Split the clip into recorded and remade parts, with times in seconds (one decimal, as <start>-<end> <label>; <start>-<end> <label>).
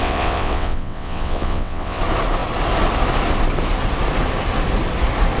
0.0-2.0 remade; 2.0-5.4 recorded